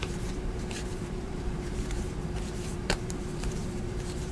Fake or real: fake